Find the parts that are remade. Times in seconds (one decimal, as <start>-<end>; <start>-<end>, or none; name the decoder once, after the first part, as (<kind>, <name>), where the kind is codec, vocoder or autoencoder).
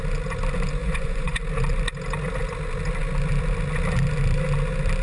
0.8-1.4 (vocoder, Vocos)